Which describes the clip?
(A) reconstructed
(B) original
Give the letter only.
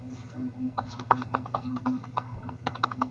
A